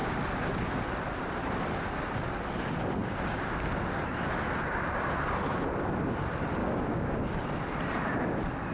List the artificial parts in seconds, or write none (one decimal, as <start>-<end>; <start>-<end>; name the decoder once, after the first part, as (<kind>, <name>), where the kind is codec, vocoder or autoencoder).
6.6-7.4 (codec, DAC)